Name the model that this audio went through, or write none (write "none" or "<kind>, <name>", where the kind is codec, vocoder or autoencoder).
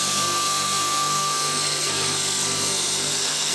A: codec, SNAC